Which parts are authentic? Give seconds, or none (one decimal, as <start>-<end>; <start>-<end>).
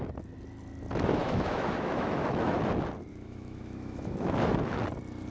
0.0-1.2; 2.6-3.1; 4.6-5.3